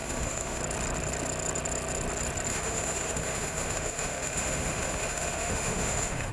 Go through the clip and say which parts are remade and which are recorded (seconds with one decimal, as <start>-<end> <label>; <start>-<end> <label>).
0.0-0.6 remade; 0.6-2.5 recorded; 2.5-6.3 remade